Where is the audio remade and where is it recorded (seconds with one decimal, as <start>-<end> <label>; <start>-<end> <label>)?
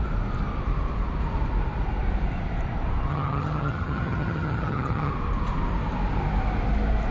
0.0-3.1 recorded; 3.1-5.1 remade; 5.1-7.1 recorded